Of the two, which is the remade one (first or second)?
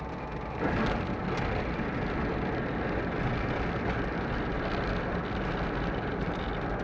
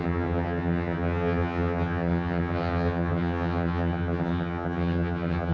second